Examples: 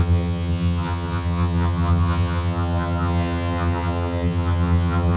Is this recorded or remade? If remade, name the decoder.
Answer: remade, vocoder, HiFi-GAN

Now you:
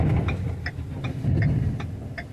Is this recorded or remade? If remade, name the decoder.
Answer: recorded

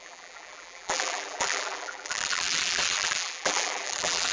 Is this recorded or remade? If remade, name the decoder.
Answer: remade, vocoder, BigVGAN v2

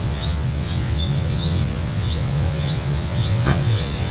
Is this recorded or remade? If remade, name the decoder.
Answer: remade, vocoder, WaveNeXt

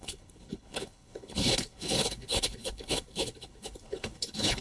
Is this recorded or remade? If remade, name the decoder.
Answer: remade, codec, HILCodec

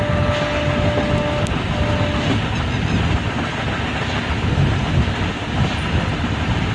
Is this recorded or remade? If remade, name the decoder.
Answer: recorded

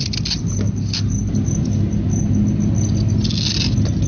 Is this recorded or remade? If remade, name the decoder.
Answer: recorded